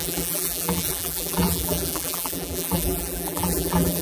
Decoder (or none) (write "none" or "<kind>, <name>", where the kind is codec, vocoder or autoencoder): vocoder, BigVGAN v2